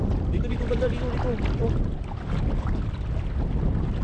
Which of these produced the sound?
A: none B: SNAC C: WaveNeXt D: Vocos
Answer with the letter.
A